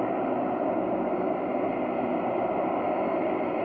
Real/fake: real